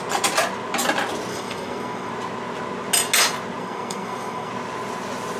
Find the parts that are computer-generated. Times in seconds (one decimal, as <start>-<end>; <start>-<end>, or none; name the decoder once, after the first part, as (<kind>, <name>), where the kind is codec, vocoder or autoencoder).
1.3-2.1 (codec, SNAC); 3.6-4.5